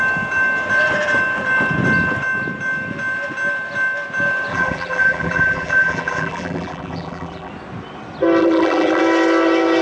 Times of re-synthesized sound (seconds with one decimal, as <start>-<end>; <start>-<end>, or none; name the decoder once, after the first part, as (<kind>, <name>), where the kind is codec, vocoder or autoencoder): 4.5-7.5 (vocoder, BigVGAN v2); 8.4-9.0